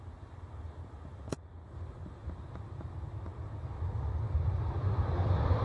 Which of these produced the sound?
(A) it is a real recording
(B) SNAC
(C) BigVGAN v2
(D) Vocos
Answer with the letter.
A